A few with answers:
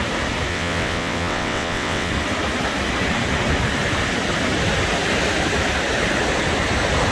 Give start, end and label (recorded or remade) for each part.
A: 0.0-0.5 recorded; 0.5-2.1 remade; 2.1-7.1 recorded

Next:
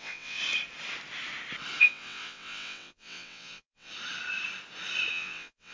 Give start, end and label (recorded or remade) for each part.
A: 0.0-0.4 remade; 0.4-1.8 recorded; 1.8-3.9 remade; 3.9-5.1 recorded; 5.1-5.7 remade

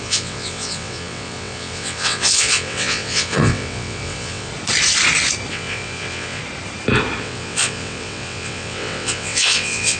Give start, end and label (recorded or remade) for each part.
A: 0.0-4.5 remade; 4.5-5.5 recorded; 5.5-6.4 remade; 6.4-7.2 recorded; 7.2-10.0 remade

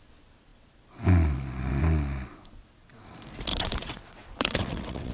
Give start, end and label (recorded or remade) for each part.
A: 0.0-3.5 recorded; 3.5-5.1 remade

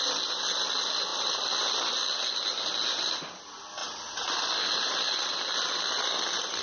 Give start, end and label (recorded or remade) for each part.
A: 0.0-6.6 recorded

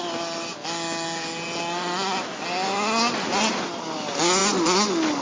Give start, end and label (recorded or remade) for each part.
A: 0.0-5.2 recorded